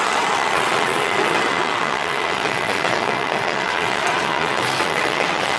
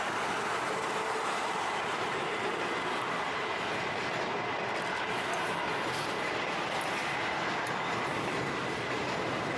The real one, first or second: second